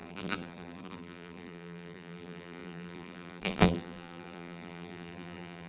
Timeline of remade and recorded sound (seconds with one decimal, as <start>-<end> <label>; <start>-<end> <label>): 0.0-5.7 remade